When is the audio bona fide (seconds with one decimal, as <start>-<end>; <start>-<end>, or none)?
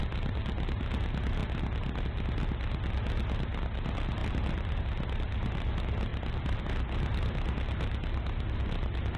0.0-4.2; 4.8-6.1; 6.6-9.2